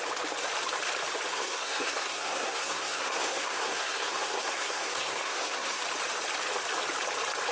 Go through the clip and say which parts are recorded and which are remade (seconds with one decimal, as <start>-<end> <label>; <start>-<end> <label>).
0.0-1.3 recorded; 1.3-5.8 remade; 5.8-7.5 recorded